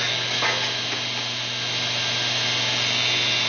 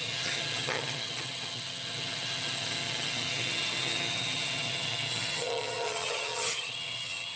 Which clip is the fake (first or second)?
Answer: second